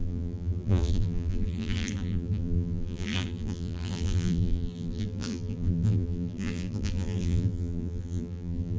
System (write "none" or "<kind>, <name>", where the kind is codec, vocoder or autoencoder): vocoder, BigVGAN v2